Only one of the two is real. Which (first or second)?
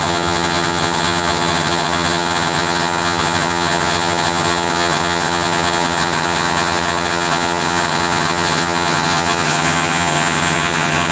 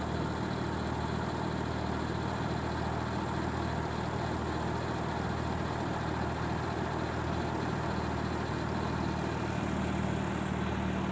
second